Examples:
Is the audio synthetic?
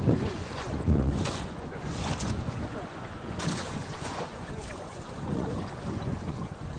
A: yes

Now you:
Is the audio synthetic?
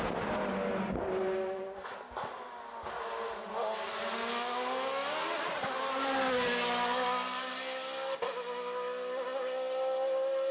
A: no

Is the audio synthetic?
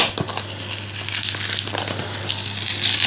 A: no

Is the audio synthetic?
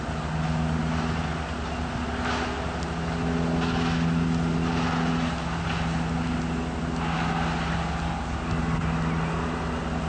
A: no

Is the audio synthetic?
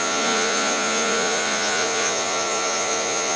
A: yes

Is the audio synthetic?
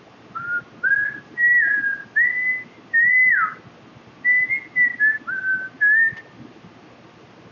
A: no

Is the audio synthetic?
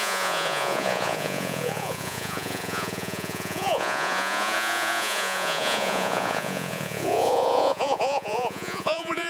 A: yes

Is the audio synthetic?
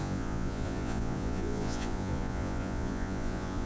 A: yes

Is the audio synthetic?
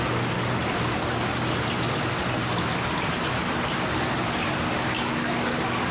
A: no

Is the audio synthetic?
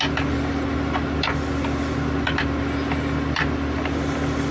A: no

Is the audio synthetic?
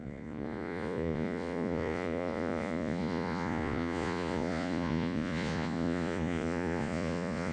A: yes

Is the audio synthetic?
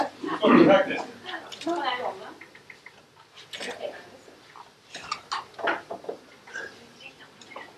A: no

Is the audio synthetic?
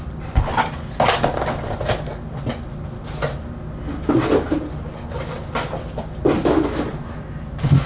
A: no